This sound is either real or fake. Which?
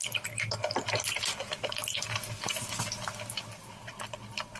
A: real